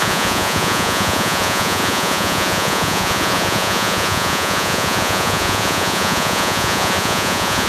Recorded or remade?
remade